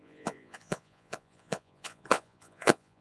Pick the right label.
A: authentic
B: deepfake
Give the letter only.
B